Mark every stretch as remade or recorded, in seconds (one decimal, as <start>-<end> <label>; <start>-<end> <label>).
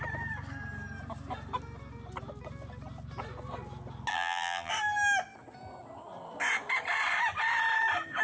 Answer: 0.0-4.1 recorded; 4.1-4.7 remade; 4.7-8.2 recorded